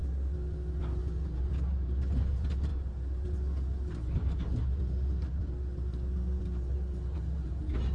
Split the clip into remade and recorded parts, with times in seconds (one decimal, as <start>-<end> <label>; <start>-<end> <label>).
0.0-7.9 recorded